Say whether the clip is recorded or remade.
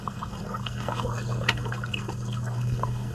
remade